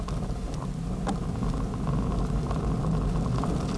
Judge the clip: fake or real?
real